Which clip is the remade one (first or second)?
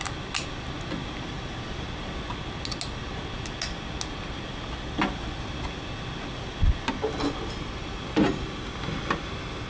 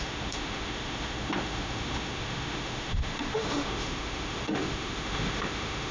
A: second